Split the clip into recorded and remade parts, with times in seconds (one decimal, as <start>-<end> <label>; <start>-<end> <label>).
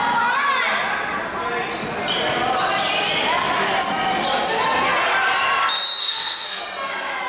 0.0-6.0 recorded; 6.0-6.6 remade; 6.6-7.3 recorded